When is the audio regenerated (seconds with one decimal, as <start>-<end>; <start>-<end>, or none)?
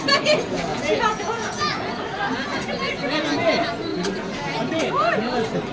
0.7-2.0